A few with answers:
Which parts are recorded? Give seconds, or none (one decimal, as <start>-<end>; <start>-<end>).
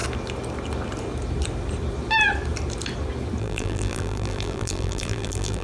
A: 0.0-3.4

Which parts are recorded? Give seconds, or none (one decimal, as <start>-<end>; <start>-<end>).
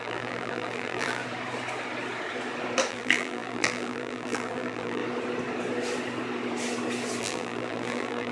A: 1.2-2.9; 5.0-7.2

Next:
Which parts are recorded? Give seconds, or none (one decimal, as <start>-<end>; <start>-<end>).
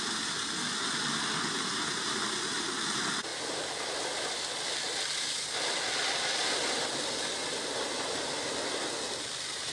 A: 0.0-1.7; 2.9-9.7